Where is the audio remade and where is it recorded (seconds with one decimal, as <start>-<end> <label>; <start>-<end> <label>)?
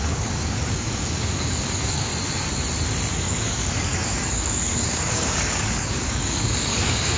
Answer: 0.0-2.1 remade; 2.1-3.1 recorded; 3.1-7.2 remade